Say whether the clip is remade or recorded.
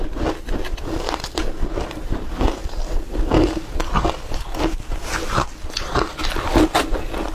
recorded